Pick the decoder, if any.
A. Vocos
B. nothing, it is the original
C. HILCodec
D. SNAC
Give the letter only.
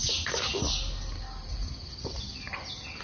B